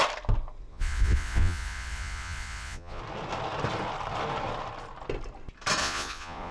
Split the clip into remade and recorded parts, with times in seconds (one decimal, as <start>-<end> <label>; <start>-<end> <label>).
0.0-0.7 recorded; 0.7-3.0 remade; 3.0-5.8 recorded; 5.8-6.5 remade